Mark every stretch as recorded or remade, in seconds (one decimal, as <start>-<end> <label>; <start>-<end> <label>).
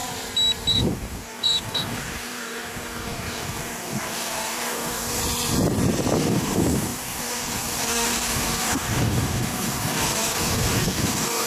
0.0-0.7 recorded; 0.7-5.2 remade; 5.2-6.2 recorded; 6.2-11.5 remade